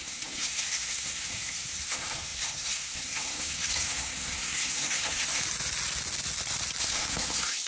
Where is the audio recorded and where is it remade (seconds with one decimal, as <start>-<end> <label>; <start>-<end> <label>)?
0.0-5.4 remade; 5.4-6.8 recorded; 6.8-7.7 remade